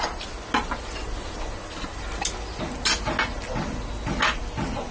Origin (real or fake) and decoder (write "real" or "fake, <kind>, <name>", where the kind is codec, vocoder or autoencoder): real